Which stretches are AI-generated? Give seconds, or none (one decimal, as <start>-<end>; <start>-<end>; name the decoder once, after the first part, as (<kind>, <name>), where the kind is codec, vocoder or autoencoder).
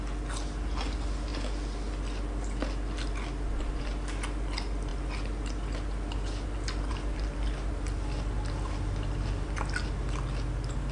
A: none